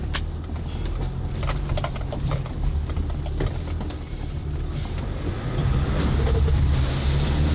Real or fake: real